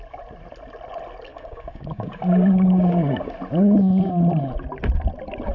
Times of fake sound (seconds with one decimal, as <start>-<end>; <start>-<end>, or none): 1.3-3.3